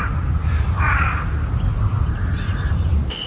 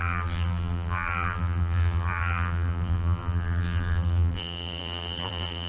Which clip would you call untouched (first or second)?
first